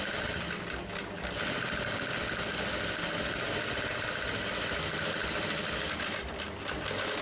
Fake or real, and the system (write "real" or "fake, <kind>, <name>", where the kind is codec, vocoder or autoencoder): real